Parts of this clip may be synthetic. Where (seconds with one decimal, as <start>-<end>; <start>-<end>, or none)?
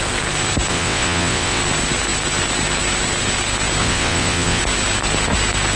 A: 0.7-1.6; 3.8-4.6